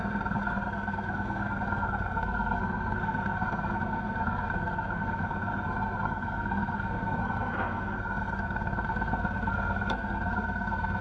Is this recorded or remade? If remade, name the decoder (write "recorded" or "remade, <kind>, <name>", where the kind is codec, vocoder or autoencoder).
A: remade, codec, SNAC